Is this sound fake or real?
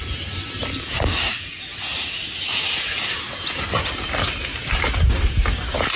real